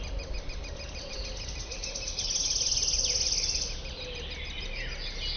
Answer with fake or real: real